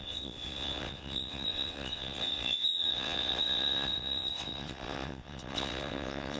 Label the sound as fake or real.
fake